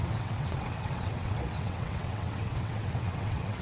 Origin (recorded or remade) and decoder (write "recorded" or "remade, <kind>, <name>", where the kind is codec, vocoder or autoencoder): remade, vocoder, WaveNeXt